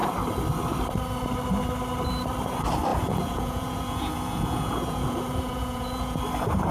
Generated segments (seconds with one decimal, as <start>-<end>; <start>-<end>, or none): 2.9-6.2